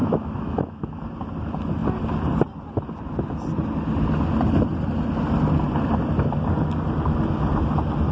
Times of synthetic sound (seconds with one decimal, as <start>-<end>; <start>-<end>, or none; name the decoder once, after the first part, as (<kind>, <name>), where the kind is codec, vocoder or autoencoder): 0.0-1.0 (autoencoder, DAC-VAE)